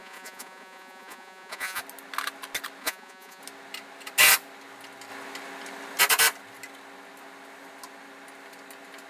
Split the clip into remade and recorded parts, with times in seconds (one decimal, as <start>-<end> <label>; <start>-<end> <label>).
0.0-1.8 remade; 1.8-2.8 recorded; 2.8-3.4 remade; 3.4-9.1 recorded